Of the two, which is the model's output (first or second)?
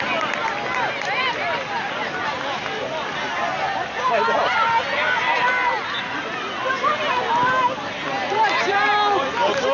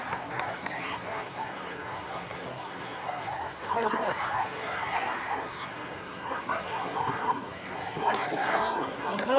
second